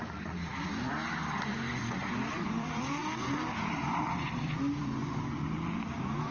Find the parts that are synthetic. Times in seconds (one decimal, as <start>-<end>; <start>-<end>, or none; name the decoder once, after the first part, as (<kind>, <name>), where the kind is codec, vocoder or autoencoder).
0.0-6.3 (vocoder, BigVGAN v2)